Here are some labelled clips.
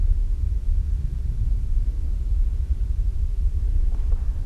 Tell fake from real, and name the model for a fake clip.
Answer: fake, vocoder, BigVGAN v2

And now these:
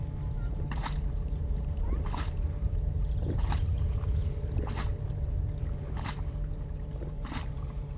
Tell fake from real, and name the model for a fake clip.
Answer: fake, vocoder, BigVGAN v2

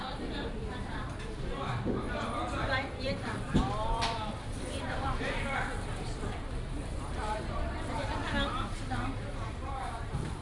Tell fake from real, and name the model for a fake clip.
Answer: fake, vocoder, BigVGAN v2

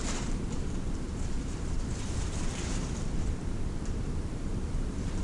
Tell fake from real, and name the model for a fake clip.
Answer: fake, vocoder, BigVGAN v2